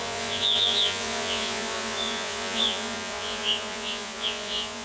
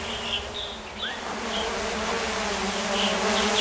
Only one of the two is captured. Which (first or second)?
second